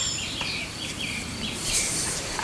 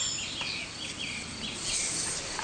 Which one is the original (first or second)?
second